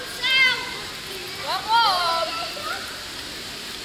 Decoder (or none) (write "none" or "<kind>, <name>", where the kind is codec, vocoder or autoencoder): none